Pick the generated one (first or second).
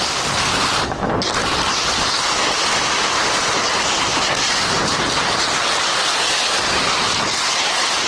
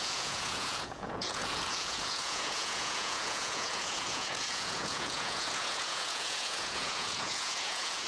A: second